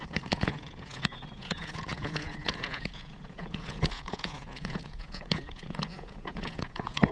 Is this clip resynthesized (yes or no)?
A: yes